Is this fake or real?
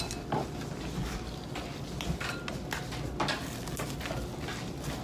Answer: real